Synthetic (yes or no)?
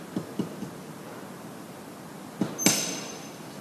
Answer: no